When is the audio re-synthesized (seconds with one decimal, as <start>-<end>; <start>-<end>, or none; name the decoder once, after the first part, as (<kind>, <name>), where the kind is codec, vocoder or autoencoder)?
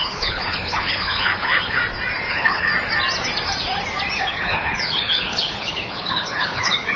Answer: 0.0-1.8 (codec, HILCodec); 2.3-2.7; 4.2-7.0